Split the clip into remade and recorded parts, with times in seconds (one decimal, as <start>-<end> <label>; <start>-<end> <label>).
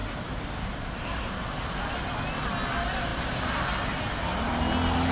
0.0-1.0 remade; 1.0-5.1 recorded